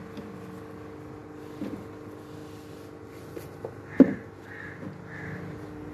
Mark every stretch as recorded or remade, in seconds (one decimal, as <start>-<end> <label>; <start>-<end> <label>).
0.0-5.9 recorded